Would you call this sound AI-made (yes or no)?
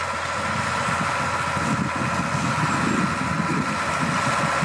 no